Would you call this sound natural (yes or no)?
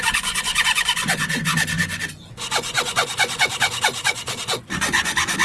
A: no